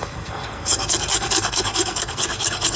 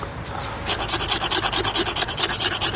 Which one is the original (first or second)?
second